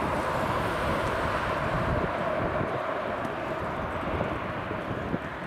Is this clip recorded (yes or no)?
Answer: yes